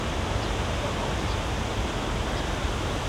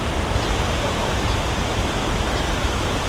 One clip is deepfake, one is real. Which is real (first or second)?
first